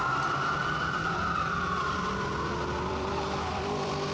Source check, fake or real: fake